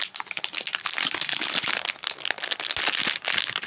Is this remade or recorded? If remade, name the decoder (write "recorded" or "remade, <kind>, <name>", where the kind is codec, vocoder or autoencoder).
recorded